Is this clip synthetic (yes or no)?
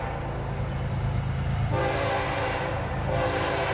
no